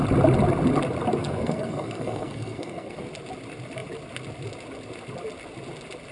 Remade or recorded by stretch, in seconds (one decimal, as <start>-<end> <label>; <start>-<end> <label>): 0.0-1.2 recorded; 1.2-3.0 remade; 3.0-6.1 recorded